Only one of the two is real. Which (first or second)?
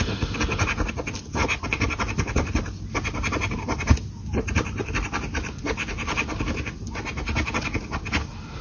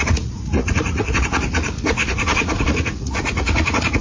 first